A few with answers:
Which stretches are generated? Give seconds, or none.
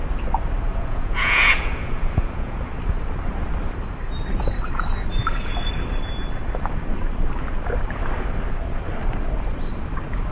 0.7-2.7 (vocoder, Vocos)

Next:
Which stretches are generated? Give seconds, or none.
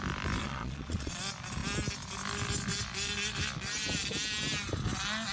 0.4-1.1 (vocoder, Vocos)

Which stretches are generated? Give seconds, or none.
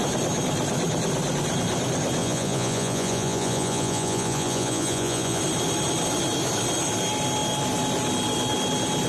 2.2-5.4 (vocoder, Vocos)